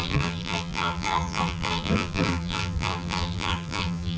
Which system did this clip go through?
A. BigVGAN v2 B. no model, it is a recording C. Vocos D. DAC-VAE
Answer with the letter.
A